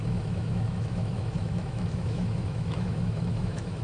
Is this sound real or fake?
fake